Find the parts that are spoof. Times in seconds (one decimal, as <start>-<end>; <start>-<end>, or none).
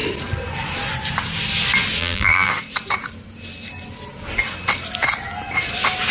2.0-2.5